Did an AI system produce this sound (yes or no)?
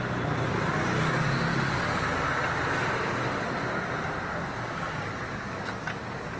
no